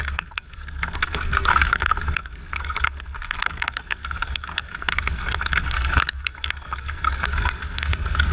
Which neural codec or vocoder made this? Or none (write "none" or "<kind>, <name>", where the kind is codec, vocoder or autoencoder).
codec, SNAC